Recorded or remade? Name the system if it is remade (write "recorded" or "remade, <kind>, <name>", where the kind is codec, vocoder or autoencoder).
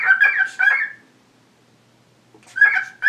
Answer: recorded